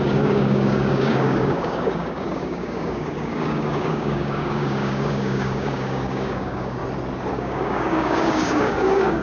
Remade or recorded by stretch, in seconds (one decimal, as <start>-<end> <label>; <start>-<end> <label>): 0.0-6.8 remade; 6.8-7.3 recorded; 7.3-9.2 remade